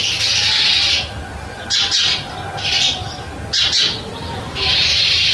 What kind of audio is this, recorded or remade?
recorded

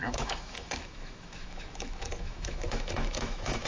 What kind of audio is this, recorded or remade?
remade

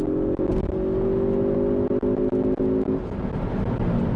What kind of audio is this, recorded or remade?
recorded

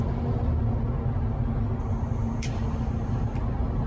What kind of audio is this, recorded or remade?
recorded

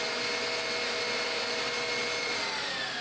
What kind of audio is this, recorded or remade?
recorded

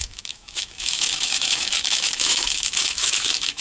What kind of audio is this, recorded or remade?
remade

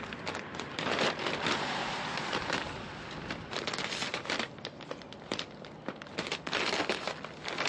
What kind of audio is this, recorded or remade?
recorded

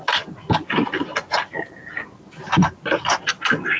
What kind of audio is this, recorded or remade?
recorded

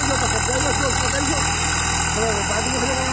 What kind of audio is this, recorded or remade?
recorded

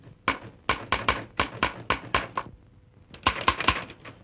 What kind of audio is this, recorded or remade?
recorded